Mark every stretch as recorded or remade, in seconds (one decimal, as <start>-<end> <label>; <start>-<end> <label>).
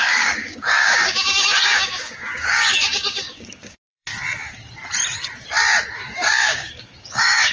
0.0-4.1 remade; 4.1-6.0 recorded; 6.0-7.5 remade